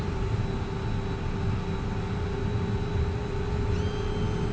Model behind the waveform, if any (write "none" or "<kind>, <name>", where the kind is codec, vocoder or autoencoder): none